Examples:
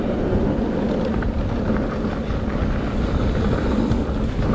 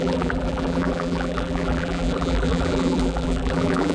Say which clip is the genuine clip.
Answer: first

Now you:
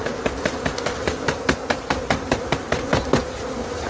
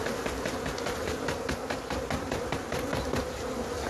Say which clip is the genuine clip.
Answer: second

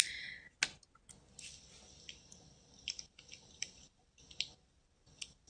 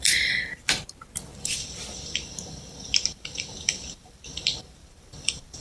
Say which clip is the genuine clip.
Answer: first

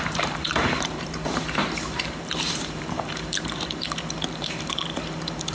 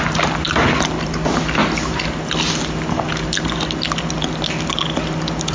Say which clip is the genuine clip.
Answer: second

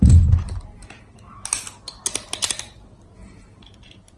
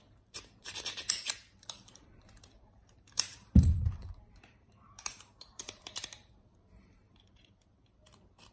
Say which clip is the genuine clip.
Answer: first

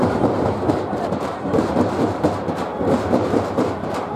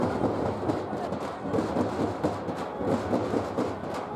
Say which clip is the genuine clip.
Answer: second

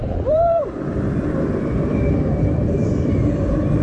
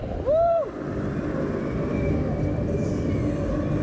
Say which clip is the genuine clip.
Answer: second